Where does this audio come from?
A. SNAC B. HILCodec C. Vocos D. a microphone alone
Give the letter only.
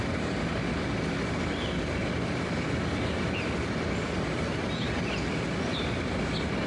D